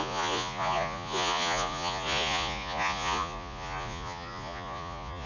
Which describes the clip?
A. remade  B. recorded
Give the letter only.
A